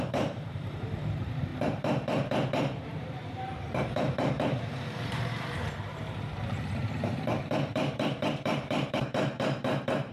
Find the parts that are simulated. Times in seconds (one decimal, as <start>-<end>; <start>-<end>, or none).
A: 0.0-10.1